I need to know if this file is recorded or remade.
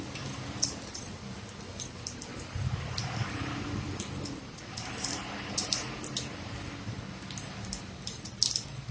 recorded